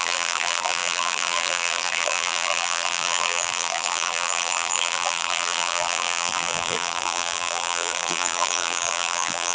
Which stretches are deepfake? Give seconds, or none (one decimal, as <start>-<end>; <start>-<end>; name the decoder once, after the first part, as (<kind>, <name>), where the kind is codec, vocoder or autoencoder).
0.0-9.5 (vocoder, BigVGAN v2)